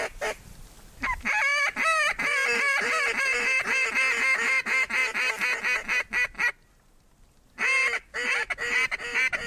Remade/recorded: recorded